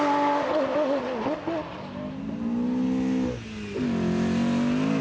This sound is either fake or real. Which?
real